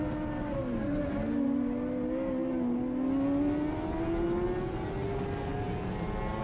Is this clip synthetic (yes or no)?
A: no